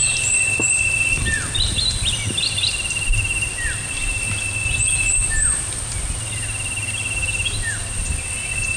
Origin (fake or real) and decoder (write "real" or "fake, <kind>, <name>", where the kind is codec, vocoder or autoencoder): real